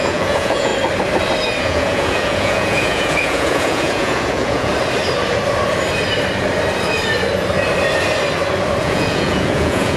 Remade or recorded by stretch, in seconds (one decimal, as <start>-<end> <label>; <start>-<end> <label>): 0.0-0.7 remade; 0.7-1.6 recorded; 1.6-4.7 remade; 4.7-8.8 recorded; 8.8-10.0 remade